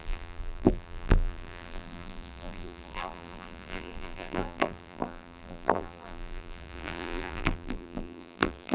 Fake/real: fake